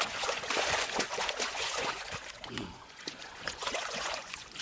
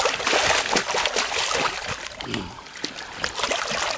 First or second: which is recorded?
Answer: second